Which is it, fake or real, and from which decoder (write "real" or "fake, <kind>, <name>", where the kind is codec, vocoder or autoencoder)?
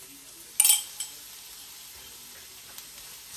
real